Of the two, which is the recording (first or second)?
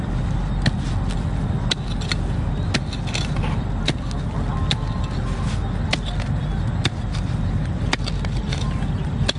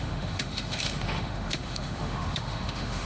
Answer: first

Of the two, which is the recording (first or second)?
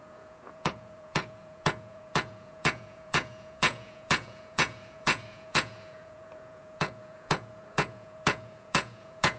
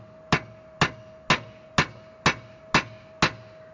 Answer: second